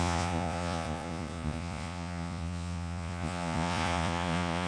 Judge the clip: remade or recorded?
remade